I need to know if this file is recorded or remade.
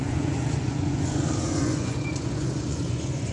remade